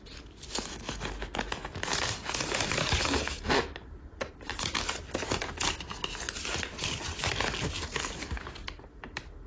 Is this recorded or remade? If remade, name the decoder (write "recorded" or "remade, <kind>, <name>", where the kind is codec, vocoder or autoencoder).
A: recorded